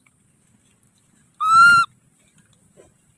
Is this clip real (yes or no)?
yes